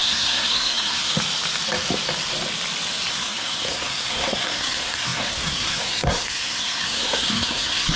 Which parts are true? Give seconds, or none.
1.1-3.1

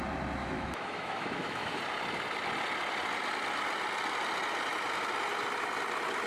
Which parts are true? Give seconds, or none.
0.0-0.4; 1.8-6.3

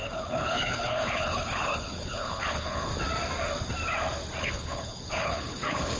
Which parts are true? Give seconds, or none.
2.9-4.4

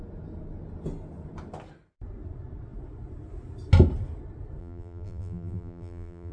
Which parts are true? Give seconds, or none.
0.0-4.6

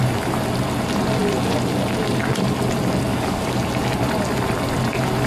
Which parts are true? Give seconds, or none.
0.0-3.1; 3.6-5.3